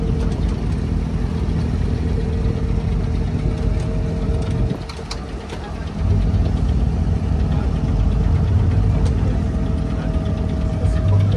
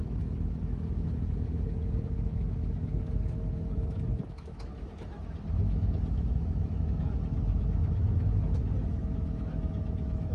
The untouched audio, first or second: first